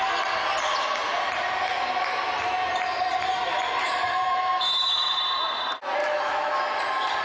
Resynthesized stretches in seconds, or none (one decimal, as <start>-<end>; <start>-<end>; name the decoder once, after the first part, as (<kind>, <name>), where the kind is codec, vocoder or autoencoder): 3.8-5.2 (autoencoder, DAC-VAE); 6.0-6.6